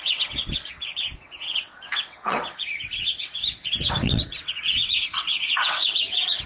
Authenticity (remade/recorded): remade